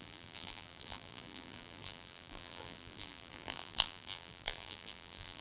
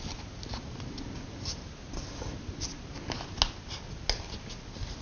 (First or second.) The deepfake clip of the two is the first